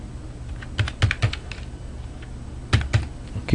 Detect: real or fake real